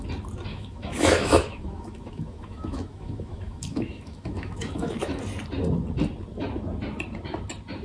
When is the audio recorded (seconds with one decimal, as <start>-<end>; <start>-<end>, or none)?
0.0-0.5; 5.2-7.8

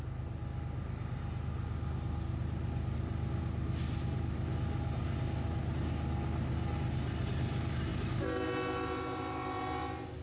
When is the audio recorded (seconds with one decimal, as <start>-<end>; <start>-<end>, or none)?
0.0-10.2

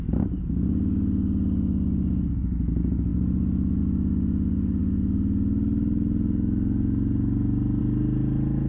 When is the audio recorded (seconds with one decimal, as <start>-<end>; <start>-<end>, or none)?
0.0-8.7

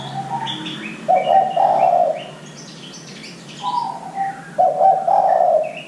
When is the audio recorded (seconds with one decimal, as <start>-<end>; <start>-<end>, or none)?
0.0-5.9

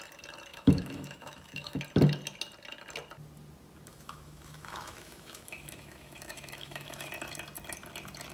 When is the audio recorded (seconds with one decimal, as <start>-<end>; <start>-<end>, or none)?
0.0-0.5; 1.8-3.9; 7.1-8.3

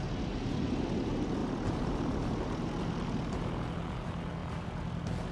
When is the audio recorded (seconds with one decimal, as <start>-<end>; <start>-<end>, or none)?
0.0-5.3

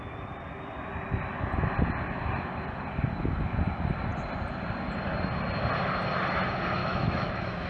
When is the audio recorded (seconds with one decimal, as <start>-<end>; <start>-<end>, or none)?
0.0-6.8